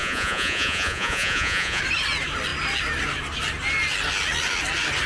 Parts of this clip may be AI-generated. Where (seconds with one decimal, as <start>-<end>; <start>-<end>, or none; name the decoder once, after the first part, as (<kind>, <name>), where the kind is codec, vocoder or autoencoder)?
0.0-1.8 (vocoder, Vocos)